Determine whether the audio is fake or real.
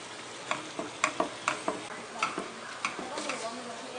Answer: real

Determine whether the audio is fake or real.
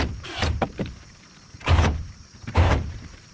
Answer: fake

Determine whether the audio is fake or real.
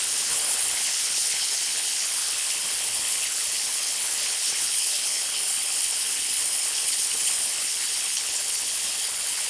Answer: fake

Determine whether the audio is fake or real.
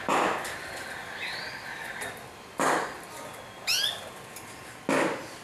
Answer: real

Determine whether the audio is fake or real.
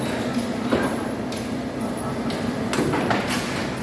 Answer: real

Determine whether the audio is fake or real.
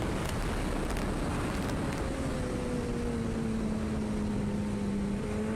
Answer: real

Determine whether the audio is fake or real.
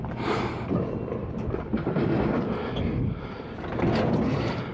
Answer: real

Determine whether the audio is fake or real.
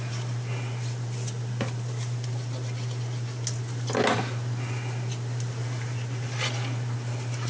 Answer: real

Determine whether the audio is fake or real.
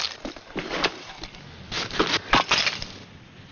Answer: real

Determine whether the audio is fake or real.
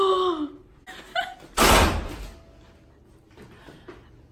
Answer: real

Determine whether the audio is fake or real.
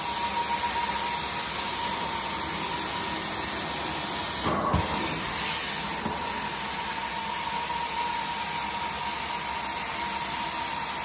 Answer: real